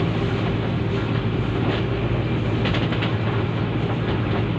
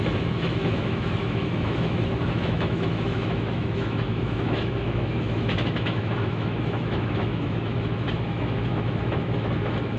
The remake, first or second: second